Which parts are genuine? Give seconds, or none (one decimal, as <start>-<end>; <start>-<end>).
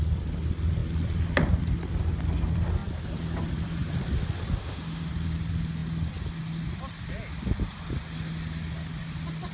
0.0-4.6; 5.1-9.5